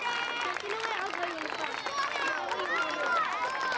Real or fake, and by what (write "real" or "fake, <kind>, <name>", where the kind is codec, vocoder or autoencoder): real